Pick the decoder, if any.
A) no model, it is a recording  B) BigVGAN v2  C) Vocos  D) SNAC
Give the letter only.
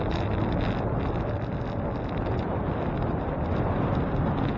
A